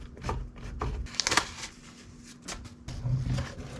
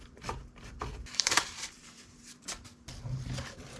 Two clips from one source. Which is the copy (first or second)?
second